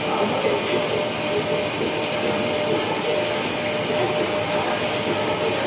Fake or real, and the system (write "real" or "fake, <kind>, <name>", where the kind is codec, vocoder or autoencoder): real